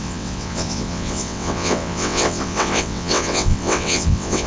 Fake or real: fake